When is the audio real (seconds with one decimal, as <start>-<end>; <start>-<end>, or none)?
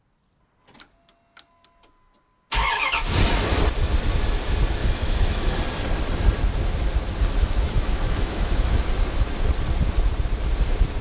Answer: 0.0-4.8; 5.6-7.4; 8.8-11.0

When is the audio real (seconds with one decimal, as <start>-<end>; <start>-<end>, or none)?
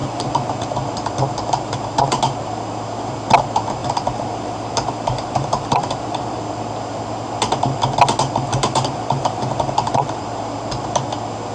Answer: 0.5-3.8; 6.4-8.5; 10.2-11.5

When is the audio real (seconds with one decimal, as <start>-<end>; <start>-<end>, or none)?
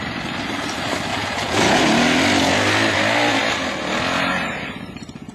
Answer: 0.0-1.1; 1.8-5.3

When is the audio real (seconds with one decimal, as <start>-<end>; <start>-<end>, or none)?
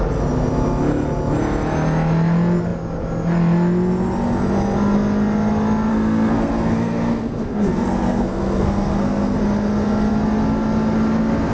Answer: 0.0-5.9; 9.4-11.5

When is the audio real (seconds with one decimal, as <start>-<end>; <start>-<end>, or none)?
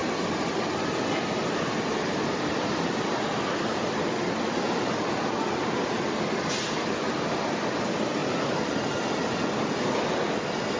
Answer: 0.0-10.8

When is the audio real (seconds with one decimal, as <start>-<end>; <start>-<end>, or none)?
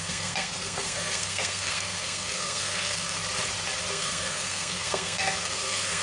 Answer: 3.2-3.9